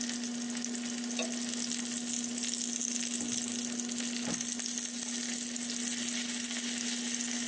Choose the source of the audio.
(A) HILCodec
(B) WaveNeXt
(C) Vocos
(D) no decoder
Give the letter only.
D